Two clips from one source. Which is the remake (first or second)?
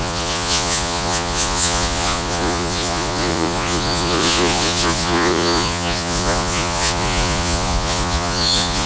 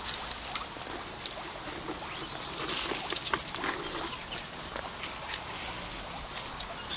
first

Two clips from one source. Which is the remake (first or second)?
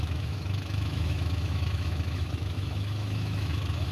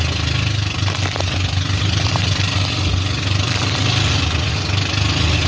first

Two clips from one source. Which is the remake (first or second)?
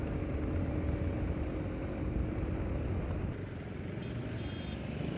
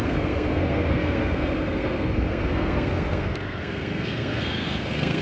second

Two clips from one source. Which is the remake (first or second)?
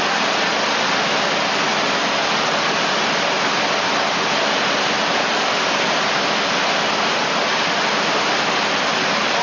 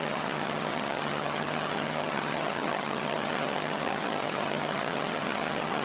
second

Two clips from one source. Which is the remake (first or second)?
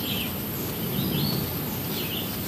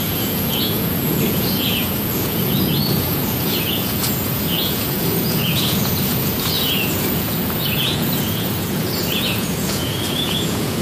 second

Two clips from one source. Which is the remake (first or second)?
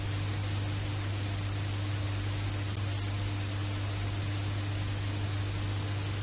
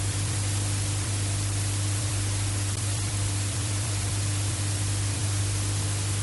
second